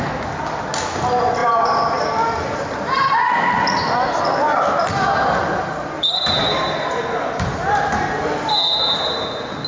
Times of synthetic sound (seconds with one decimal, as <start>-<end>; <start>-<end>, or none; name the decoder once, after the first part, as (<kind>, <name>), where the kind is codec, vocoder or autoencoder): 1.4-4.7 (vocoder, BigVGAN v2); 5.4-6.4